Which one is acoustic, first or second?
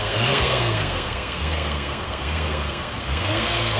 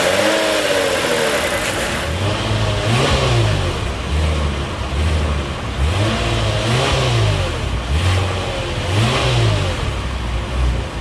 second